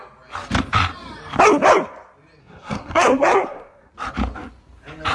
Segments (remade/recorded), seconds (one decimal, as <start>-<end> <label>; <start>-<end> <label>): 0.0-2.4 recorded; 2.4-3.9 remade; 3.9-5.1 recorded